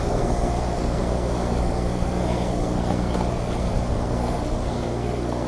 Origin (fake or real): fake